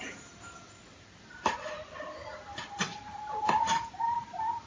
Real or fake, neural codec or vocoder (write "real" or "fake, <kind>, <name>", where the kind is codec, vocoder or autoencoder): fake, vocoder, BigVGAN v2